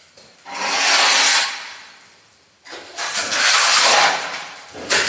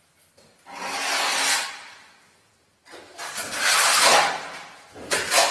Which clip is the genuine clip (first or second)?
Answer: second